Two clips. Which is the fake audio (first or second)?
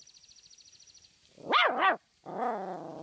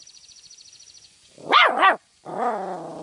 second